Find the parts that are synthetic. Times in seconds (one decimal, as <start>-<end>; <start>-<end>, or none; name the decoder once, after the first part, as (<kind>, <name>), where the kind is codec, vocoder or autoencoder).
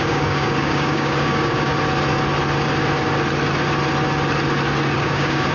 0.0-1.7 (codec, DAC); 5.0-5.5